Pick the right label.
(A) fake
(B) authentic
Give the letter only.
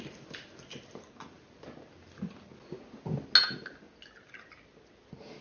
B